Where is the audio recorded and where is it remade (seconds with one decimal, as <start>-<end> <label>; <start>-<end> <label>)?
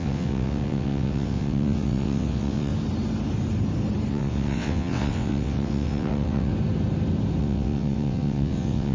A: 0.0-2.7 remade; 2.7-4.1 recorded; 4.1-6.5 remade; 6.5-7.4 recorded; 7.4-8.9 remade